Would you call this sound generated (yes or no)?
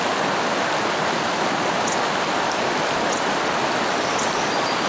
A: no